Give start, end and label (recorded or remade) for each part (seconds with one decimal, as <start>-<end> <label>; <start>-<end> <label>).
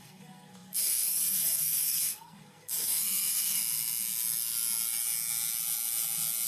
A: 0.0-3.6 remade; 3.6-6.5 recorded